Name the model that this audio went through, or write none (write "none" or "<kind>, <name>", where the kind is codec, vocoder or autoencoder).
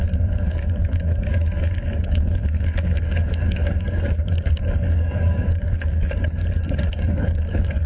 codec, DAC